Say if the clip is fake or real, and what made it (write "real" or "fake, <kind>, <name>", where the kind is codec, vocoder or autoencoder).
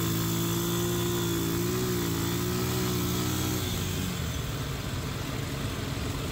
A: real